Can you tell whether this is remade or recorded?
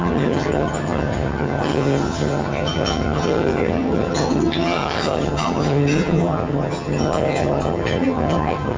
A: remade